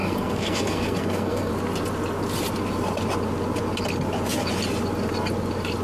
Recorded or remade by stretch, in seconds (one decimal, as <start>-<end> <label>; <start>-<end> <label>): 0.0-1.5 remade; 1.5-5.8 recorded